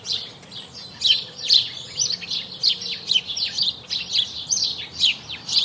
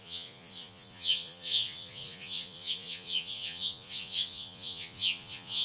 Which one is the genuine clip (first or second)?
first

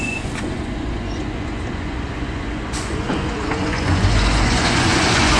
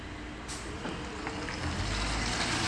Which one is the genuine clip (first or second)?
second